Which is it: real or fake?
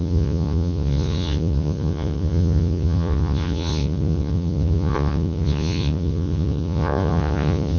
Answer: fake